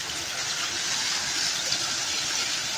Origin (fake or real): fake